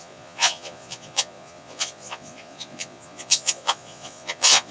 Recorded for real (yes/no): no